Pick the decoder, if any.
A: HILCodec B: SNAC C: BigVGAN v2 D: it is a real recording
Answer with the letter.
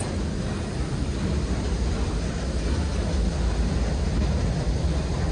D